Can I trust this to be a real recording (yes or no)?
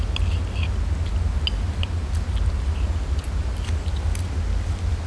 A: yes